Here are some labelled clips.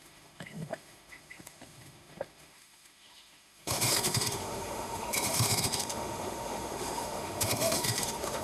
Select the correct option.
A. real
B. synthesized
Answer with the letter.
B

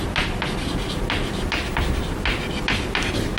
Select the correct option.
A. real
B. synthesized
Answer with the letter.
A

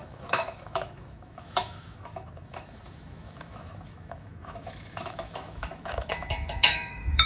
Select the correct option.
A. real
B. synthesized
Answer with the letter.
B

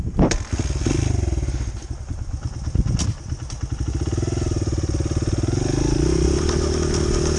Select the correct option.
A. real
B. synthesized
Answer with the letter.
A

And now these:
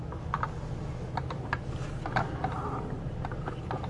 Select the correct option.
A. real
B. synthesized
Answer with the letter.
A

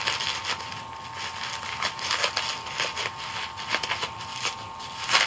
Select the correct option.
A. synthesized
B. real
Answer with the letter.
B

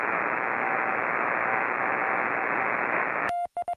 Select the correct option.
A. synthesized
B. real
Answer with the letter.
A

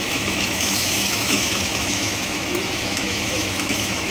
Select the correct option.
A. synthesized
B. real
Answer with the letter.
A